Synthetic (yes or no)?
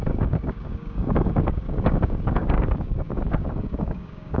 yes